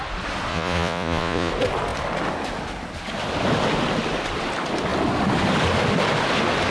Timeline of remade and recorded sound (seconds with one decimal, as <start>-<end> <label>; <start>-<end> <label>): 0.0-0.5 recorded; 0.5-1.5 remade; 1.5-6.7 recorded